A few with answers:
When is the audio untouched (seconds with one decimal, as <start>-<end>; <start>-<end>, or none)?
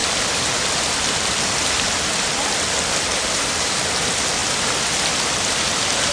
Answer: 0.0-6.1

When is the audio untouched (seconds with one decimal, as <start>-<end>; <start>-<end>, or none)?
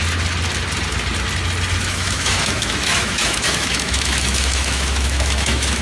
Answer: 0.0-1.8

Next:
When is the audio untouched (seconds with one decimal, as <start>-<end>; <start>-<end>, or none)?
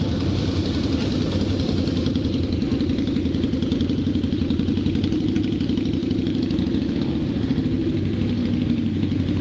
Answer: 0.0-6.0; 7.0-9.4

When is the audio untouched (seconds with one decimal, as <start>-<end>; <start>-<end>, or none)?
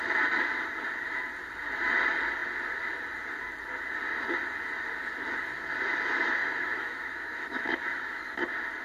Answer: 0.0-6.4; 8.2-8.8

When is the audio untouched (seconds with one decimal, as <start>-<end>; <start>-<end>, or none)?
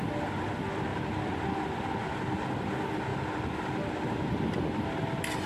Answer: 0.0-5.5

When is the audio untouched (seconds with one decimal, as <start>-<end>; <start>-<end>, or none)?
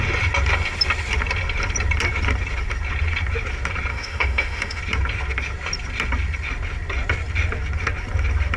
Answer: 0.0-3.9; 4.8-8.6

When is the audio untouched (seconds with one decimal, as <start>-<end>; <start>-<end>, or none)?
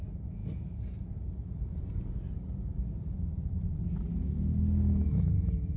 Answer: 0.0-5.8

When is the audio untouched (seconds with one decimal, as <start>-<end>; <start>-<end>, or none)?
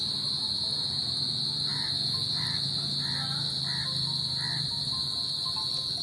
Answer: 0.0-6.0